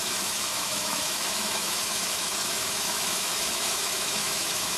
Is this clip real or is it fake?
fake